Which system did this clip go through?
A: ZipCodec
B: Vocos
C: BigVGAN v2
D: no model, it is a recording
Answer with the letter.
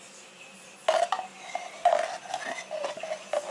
D